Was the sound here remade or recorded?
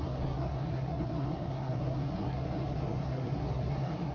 remade